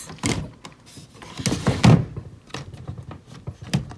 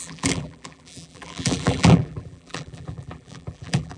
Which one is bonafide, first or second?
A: first